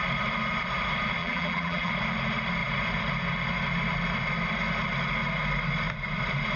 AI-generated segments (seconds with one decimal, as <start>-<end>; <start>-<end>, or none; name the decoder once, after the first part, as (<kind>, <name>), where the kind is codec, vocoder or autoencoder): 1.2-1.9 (vocoder, BigVGAN v2)